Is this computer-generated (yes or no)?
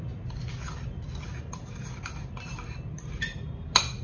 no